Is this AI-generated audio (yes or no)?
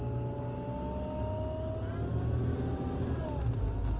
no